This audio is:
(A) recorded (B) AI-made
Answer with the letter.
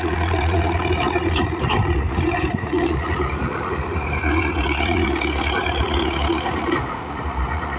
B